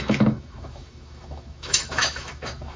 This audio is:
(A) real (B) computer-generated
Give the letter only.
B